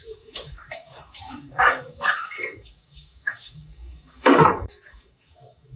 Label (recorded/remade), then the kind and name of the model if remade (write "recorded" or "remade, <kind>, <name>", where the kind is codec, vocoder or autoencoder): remade, codec, DAC